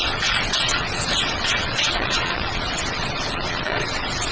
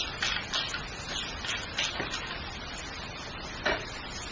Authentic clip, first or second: second